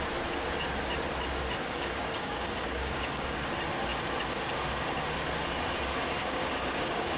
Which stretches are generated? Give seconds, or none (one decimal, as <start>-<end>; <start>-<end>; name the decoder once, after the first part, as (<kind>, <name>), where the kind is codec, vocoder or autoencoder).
1.6-3.4 (codec, DAC); 6.2-7.2

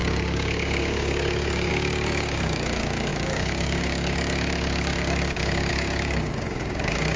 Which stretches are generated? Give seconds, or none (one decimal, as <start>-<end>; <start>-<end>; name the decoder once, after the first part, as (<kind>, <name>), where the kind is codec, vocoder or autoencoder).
0.0-7.2 (codec, DAC)

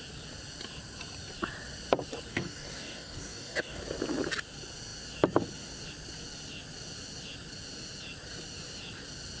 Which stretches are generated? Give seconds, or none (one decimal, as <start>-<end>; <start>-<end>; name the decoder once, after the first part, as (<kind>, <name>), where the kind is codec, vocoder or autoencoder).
2.3-3.8 (codec, DAC)

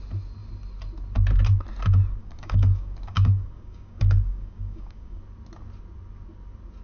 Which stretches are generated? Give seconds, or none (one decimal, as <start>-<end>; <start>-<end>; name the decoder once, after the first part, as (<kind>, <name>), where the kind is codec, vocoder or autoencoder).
2.2-5.2 (codec, DAC)

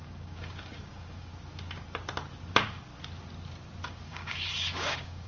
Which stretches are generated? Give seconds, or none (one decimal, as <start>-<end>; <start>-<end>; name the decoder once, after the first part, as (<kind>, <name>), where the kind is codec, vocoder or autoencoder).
0.0-1.3 (codec, DAC); 2.5-2.9; 4.0-5.3

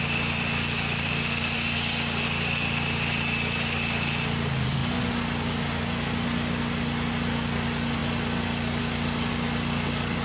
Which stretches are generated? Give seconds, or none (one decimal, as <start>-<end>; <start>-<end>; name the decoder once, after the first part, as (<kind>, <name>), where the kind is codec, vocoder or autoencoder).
none

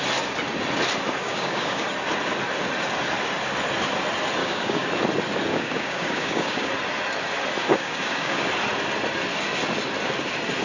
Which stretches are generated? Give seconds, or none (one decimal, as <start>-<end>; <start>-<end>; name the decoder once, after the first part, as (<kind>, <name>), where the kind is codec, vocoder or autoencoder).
1.2-1.9 (codec, DAC); 4.4-4.9; 5.5-6.7; 7.6-8.5